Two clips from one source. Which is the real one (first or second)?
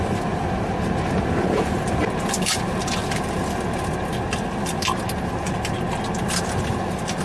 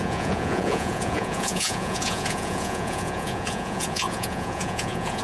first